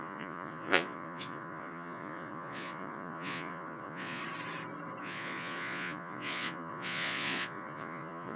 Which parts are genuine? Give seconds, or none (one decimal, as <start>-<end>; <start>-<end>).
4.2-5.0